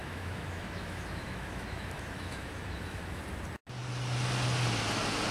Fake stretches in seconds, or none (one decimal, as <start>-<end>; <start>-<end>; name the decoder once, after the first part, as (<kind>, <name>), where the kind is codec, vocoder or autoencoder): 0.0-3.2 (autoencoder, DAC-VAE)